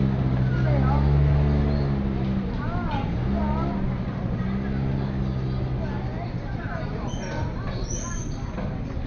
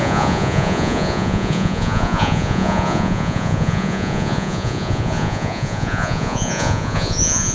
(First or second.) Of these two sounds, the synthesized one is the second